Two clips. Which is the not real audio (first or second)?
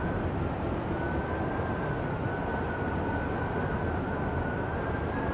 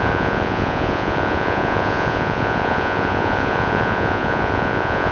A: second